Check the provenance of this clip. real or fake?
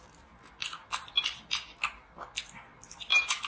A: real